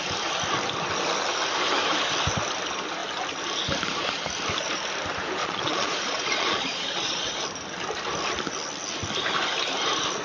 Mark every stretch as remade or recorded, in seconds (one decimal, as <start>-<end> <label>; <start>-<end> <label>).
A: 0.0-5.4 recorded; 5.4-7.4 remade; 7.4-10.2 recorded